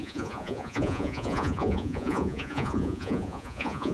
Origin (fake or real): fake